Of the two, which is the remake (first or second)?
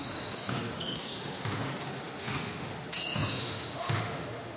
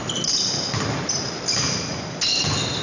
first